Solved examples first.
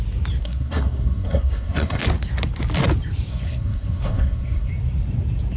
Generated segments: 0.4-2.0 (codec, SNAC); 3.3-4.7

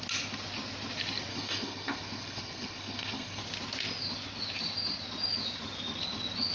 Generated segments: 1.3-3.4 (codec, SNAC)

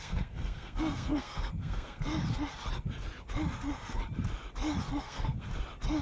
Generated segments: 0.0-2.1 (codec, SNAC); 5.0-5.5

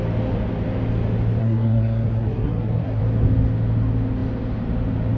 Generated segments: 1.4-3.0 (codec, SNAC)

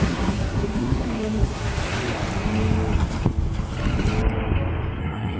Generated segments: 0.0-1.8 (codec, SNAC); 5.0-5.4

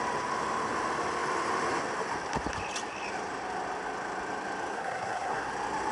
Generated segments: 4.7-5.5 (codec, SNAC)